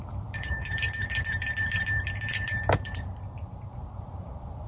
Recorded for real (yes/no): no